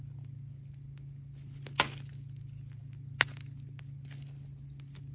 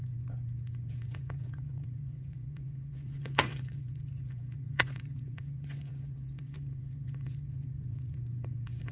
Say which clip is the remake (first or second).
second